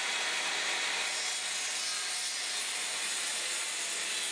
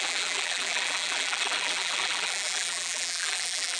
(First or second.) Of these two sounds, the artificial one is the second